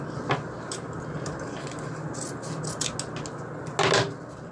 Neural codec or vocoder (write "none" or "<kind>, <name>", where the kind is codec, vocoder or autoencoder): none